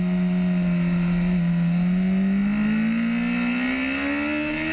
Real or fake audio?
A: real